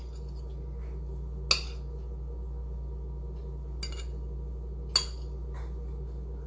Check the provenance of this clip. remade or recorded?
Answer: recorded